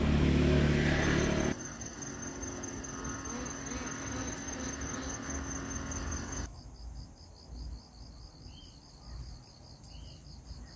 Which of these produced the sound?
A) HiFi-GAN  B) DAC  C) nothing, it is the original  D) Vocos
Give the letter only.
C